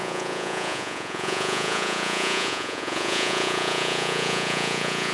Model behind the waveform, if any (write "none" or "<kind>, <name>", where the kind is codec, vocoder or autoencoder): vocoder, Vocos